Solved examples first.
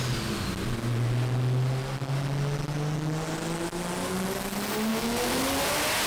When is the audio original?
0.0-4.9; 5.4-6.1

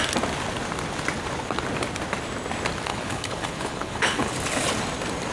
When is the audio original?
0.0-2.9; 4.3-5.3